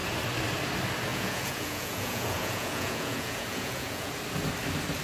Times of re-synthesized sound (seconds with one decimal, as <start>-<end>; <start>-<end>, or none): 1.1-4.1